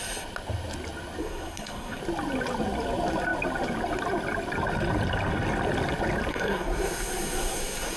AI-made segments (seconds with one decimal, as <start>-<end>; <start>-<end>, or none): 1.2-2.0; 6.3-8.0